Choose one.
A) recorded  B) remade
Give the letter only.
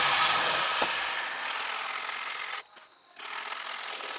A